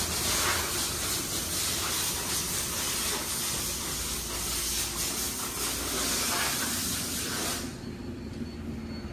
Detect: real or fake real